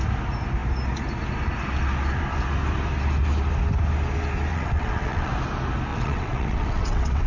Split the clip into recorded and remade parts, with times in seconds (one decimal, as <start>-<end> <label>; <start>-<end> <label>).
0.0-4.5 recorded; 4.5-5.3 remade; 5.3-5.9 recorded; 5.9-7.3 remade